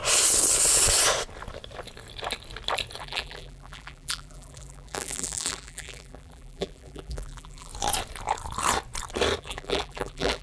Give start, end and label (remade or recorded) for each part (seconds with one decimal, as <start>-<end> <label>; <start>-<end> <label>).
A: 0.0-3.0 recorded; 3.0-7.7 remade; 7.7-9.4 recorded; 9.4-10.4 remade